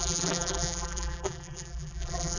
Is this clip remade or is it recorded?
remade